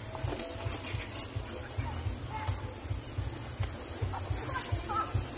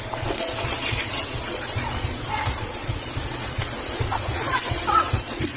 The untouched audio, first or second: first